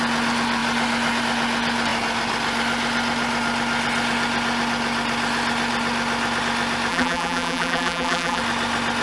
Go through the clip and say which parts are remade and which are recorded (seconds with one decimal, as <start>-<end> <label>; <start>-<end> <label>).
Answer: 0.0-6.9 recorded; 6.9-8.4 remade; 8.4-9.0 recorded